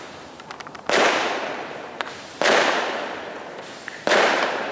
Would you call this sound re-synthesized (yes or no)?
yes